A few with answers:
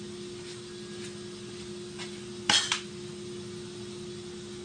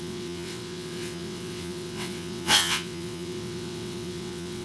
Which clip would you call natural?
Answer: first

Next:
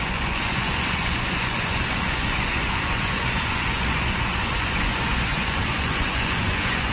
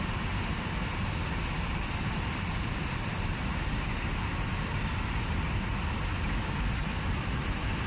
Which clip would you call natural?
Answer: second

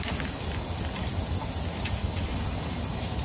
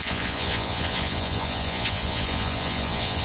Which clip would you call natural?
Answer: first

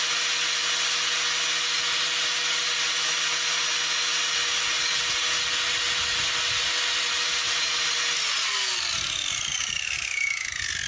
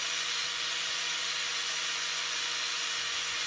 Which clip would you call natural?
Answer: first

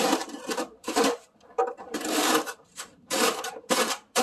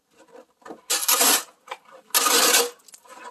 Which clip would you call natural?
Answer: second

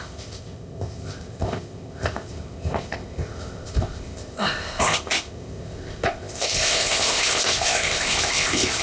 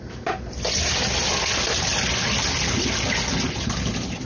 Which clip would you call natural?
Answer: second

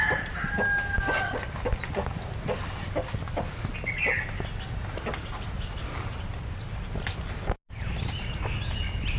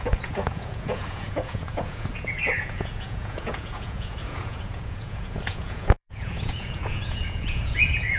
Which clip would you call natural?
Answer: first